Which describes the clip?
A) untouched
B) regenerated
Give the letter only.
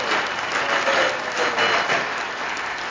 A